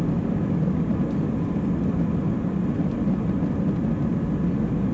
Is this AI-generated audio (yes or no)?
no